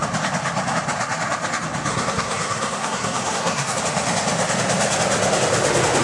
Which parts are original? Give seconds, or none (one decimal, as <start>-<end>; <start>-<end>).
0.0-1.9; 3.8-6.0